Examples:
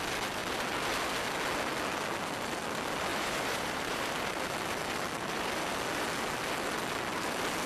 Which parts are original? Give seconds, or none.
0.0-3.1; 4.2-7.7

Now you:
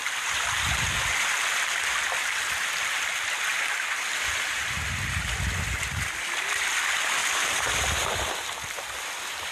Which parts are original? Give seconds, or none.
1.0-7.2; 8.1-9.5

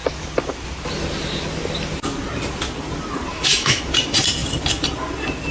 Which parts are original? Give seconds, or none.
0.0-3.3; 3.8-5.5

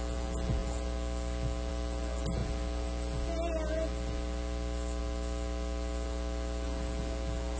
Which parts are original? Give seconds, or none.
0.0-7.6